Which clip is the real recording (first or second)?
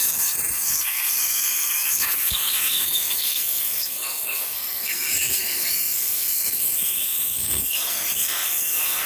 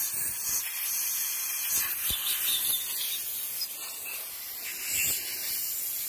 second